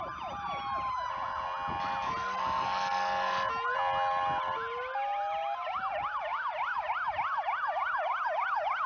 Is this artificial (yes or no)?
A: no